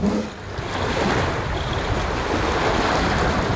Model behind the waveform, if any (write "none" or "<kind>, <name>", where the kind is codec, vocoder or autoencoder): none